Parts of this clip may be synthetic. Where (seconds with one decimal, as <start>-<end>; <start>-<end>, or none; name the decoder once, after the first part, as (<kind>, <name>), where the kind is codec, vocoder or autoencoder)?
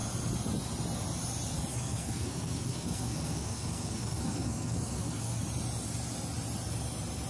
1.7-5.4 (codec, SNAC)